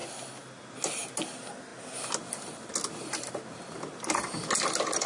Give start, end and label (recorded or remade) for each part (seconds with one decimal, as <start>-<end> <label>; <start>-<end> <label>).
0.0-5.1 recorded